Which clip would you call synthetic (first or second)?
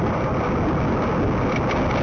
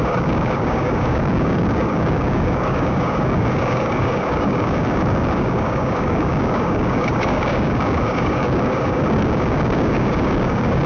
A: second